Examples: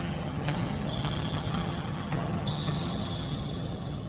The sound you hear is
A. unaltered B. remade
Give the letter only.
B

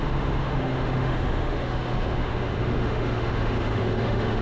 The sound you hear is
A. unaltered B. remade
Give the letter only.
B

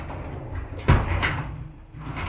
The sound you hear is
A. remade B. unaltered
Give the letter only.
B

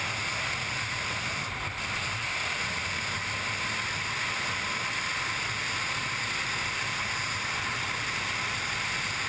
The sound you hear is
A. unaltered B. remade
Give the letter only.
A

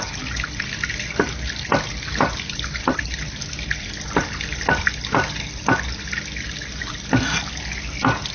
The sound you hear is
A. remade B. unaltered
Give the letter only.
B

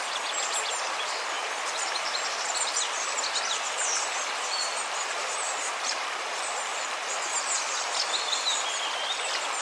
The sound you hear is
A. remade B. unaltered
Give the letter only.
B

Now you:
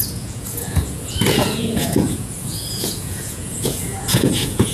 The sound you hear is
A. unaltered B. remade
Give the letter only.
B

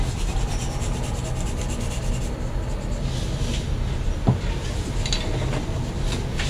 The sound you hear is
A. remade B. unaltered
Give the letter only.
B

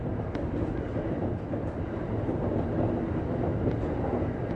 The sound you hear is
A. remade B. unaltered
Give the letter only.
B